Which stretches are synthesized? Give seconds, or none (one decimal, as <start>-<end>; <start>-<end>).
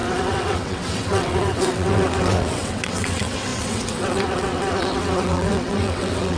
0.0-6.4